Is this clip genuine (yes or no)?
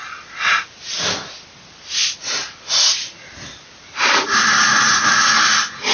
yes